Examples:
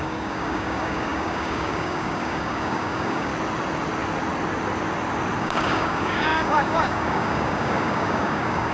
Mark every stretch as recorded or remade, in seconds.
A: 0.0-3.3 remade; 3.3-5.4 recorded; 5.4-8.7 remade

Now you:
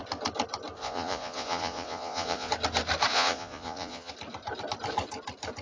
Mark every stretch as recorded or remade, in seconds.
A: 0.0-0.8 recorded; 0.8-2.5 remade; 2.5-3.1 recorded; 3.1-4.1 remade; 4.1-5.6 recorded

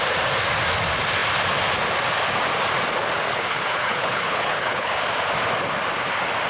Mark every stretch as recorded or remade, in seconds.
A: 0.0-3.3 recorded; 3.3-4.9 remade; 4.9-6.5 recorded

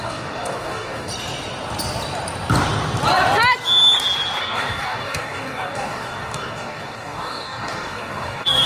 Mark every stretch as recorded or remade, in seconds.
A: 0.0-1.1 remade; 1.1-4.4 recorded; 4.4-8.7 remade

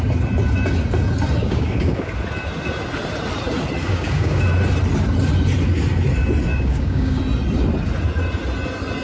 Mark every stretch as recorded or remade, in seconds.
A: 0.0-1.4 recorded; 1.4-2.1 remade; 2.1-3.8 recorded; 3.8-4.4 remade; 4.4-6.5 recorded; 6.5-7.2 remade; 7.2-9.0 recorded

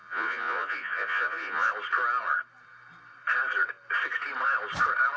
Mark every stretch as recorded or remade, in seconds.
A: 0.0-1.7 remade; 1.7-5.2 recorded

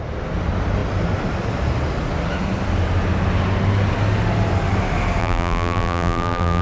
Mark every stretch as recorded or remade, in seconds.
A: 0.0-5.2 recorded; 5.2-6.6 remade

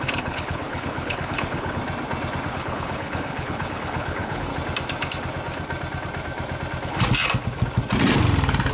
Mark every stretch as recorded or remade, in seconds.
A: 0.0-1.8 remade; 1.8-2.5 recorded; 2.5-4.5 remade; 4.5-8.7 recorded